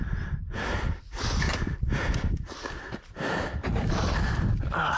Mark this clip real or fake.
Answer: real